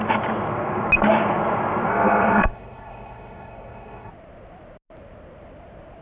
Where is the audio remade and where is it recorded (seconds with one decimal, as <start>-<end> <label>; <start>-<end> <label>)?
0.0-1.9 recorded; 1.9-4.1 remade; 4.1-6.0 recorded